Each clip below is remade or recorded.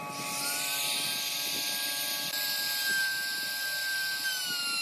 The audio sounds recorded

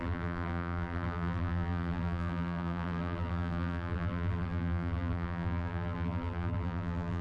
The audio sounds remade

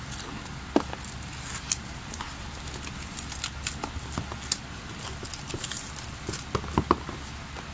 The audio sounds recorded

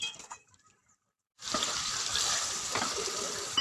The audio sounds remade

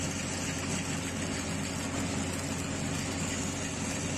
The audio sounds recorded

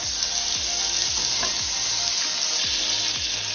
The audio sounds recorded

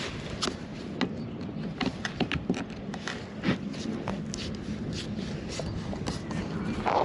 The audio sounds recorded